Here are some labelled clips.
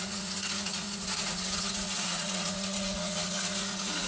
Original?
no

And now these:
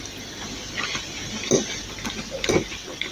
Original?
yes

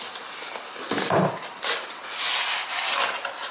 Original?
yes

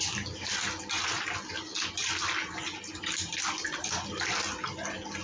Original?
yes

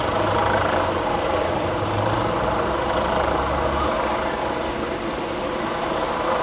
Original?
yes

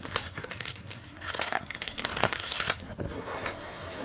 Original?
no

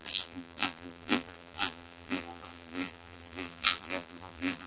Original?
no